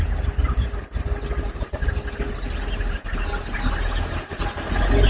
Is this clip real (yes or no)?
yes